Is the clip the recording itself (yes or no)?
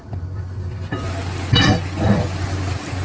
yes